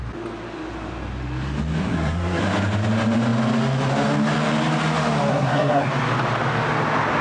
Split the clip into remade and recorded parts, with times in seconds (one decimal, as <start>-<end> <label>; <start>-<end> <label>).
0.0-1.8 recorded; 1.8-2.4 remade; 2.4-5.3 recorded; 5.3-5.9 remade; 5.9-7.2 recorded